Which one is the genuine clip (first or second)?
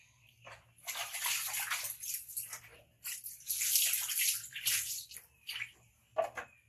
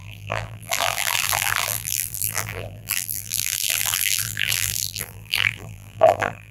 first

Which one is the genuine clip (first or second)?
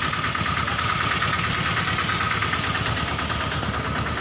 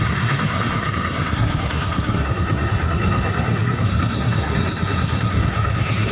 first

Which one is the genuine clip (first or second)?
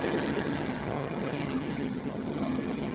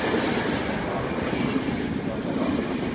second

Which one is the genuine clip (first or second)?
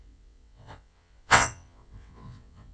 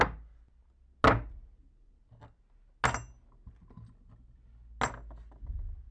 second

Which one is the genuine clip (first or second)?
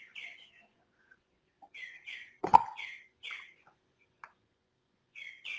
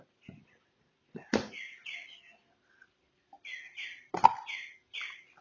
second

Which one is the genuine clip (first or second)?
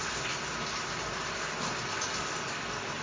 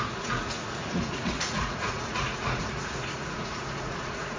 first